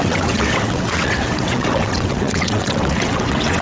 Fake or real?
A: fake